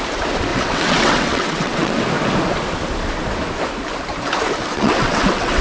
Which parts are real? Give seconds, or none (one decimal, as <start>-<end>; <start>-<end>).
0.0-0.5; 2.0-4.7